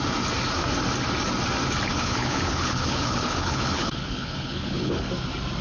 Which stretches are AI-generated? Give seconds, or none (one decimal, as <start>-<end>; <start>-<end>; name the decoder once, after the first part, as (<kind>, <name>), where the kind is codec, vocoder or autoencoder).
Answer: 1.9-5.1 (codec, HILCodec)